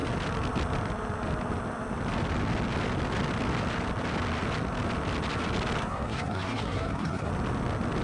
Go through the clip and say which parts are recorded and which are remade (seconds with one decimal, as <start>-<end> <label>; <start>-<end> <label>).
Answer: 0.0-5.8 recorded; 5.8-7.3 remade; 7.3-8.0 recorded